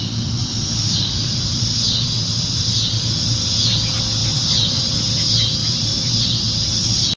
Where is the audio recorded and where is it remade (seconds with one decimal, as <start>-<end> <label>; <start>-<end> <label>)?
0.0-0.4 recorded; 0.4-2.9 remade; 2.9-4.2 recorded; 4.2-5.0 remade; 5.0-5.6 recorded; 5.6-7.2 remade